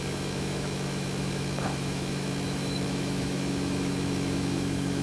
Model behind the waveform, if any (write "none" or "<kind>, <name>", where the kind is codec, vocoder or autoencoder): autoencoder, DAC-VAE